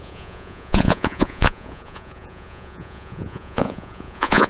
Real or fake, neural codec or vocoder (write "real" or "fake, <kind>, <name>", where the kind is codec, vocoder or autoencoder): fake, vocoder, Vocos